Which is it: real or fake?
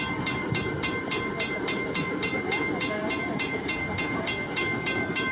fake